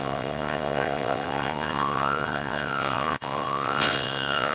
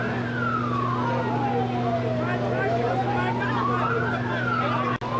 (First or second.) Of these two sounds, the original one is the second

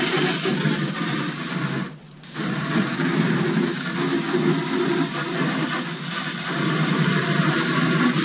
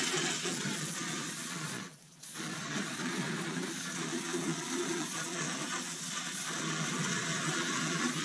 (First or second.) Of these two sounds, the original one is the first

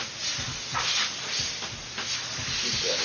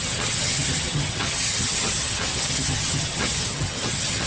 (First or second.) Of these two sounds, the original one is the first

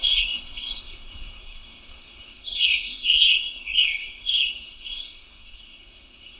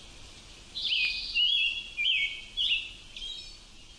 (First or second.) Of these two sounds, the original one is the second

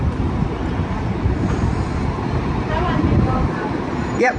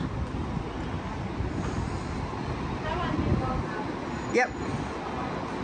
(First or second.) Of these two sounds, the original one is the second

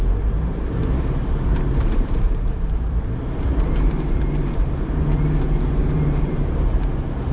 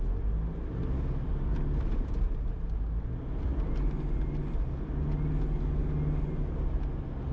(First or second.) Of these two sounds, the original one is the second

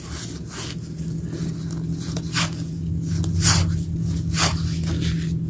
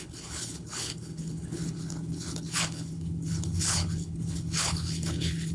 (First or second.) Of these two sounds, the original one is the first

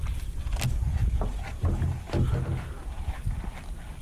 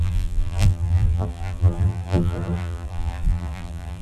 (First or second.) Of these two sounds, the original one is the first